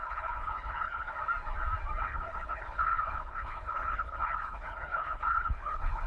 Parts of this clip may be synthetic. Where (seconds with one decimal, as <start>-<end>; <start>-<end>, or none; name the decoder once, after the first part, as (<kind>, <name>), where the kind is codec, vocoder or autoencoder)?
0.0-1.1 (codec, HILCodec); 2.0-6.1